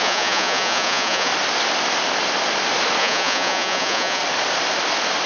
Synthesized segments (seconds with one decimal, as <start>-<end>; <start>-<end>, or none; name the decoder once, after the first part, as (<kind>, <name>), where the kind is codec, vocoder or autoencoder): 0.0-1.3 (vocoder, Vocos); 3.0-4.2